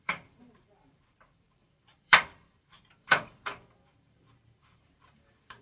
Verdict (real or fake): fake